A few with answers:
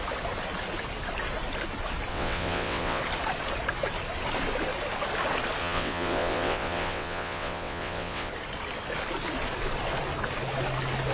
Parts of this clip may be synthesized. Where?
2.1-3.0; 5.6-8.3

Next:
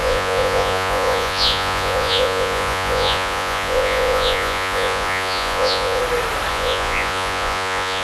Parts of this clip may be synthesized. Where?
0.0-6.0; 6.5-8.0

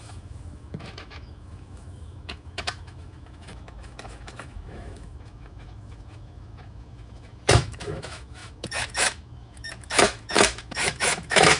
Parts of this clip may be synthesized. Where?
0.0-11.6

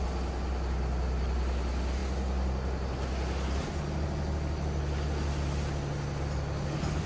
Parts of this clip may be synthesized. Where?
none